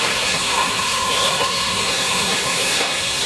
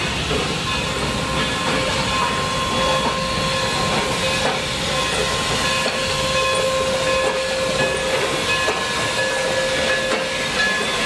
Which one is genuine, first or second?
second